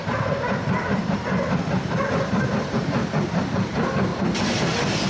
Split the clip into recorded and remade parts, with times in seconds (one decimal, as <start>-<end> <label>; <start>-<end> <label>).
0.0-4.1 remade; 4.1-5.1 recorded